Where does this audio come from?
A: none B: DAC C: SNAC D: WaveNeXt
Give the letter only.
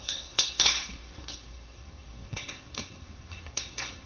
C